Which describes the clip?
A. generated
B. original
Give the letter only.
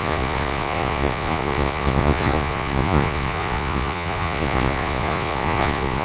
A